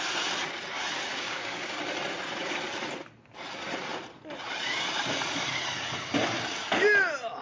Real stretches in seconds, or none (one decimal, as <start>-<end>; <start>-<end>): 0.0-1.1; 1.8-7.4